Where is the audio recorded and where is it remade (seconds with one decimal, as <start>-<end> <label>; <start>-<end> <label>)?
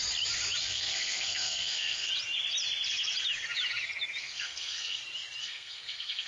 0.0-0.6 recorded; 0.6-2.1 remade; 2.1-4.2 recorded; 4.2-5.0 remade; 5.0-5.4 recorded; 5.4-6.3 remade